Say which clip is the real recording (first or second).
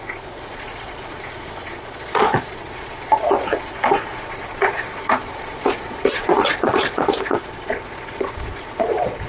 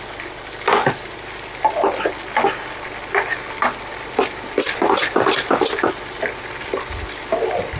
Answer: second